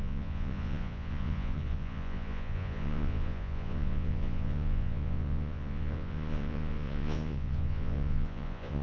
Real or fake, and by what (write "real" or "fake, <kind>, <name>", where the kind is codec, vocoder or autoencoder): fake, vocoder, Vocos